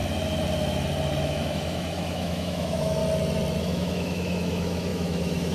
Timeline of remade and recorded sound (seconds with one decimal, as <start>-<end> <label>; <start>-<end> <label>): 0.0-1.2 recorded; 1.2-3.0 remade; 3.0-3.6 recorded; 3.6-5.5 remade